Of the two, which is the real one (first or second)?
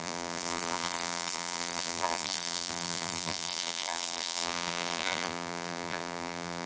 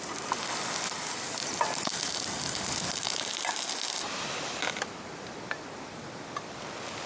second